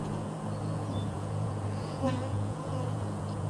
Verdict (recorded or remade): remade